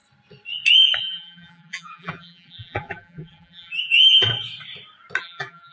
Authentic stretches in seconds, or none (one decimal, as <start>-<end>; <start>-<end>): 0.0-1.0; 4.3-5.2